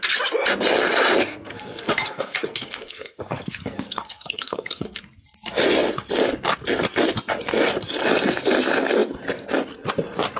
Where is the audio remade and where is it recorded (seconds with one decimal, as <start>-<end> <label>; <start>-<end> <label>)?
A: 0.0-1.3 recorded; 1.3-5.0 remade; 5.0-10.4 recorded